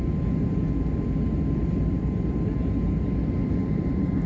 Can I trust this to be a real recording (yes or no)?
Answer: yes